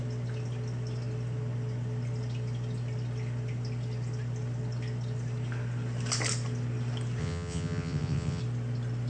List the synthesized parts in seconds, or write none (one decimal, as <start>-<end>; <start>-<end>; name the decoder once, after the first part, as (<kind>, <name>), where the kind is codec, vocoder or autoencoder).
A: 7.2-8.4 (vocoder, WaveNeXt)